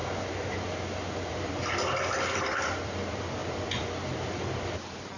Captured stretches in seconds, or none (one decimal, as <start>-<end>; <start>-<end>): 0.0-1.3